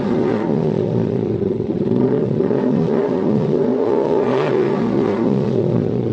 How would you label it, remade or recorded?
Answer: remade